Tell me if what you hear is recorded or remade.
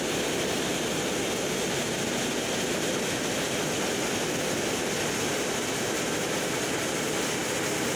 recorded